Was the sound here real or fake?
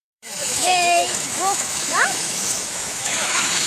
fake